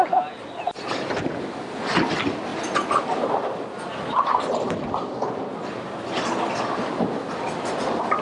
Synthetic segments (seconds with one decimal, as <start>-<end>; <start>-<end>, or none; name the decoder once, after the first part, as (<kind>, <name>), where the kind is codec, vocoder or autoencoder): none